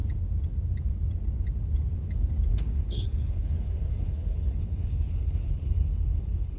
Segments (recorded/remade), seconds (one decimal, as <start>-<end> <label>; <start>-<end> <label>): 0.0-2.5 recorded; 2.5-6.6 remade